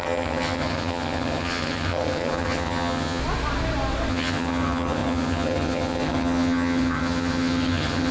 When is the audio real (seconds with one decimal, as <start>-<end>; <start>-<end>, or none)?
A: 3.2-4.1